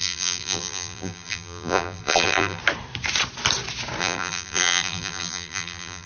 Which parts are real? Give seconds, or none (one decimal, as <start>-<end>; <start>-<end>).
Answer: 2.6-4.0

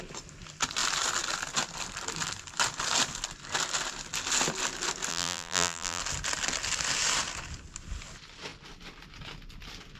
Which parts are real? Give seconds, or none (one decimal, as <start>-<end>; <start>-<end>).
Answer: 0.0-5.1; 6.0-10.0

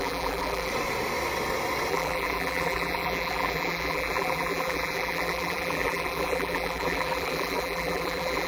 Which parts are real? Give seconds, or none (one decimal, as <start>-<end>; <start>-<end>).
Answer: 0.7-1.9

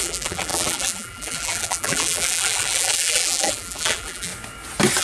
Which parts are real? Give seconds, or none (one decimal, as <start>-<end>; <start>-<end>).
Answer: 4.3-5.0

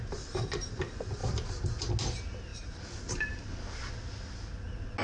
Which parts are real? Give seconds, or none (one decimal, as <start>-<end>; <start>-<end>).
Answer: 0.0-1.2; 1.9-2.5; 3.9-5.0

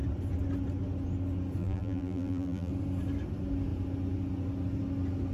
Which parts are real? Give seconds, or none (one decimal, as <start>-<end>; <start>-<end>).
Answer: 0.0-1.6; 2.7-5.3

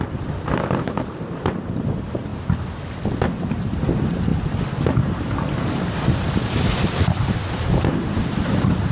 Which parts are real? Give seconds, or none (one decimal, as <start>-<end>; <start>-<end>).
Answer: 2.3-3.3; 4.3-5.0

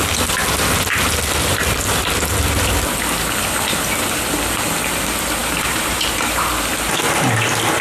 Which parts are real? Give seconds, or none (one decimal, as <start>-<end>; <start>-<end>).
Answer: 0.0-5.4; 6.5-7.8